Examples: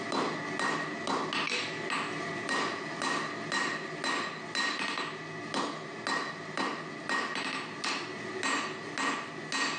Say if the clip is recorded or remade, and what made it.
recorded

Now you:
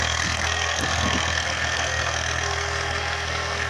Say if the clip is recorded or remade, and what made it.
remade, codec, SNAC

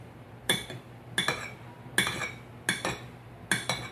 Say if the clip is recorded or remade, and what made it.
recorded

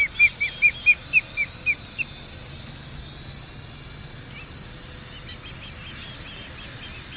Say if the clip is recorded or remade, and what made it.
recorded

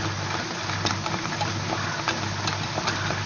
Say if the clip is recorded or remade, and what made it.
recorded